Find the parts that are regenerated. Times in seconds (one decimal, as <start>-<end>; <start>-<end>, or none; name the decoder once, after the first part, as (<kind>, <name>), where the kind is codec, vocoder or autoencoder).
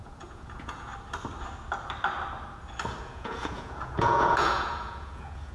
0.0-0.9 (vocoder, Vocos); 3.0-5.5